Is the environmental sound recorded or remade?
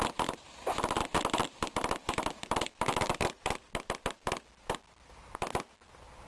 recorded